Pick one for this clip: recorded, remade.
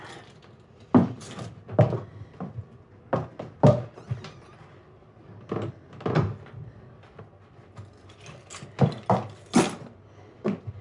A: recorded